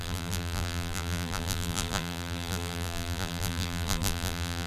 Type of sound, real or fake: fake